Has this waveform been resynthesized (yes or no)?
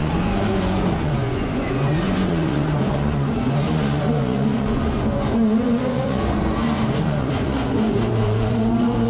yes